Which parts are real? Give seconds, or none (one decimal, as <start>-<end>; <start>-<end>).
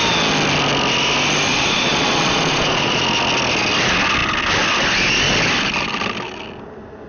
0.0-1.5; 3.0-7.1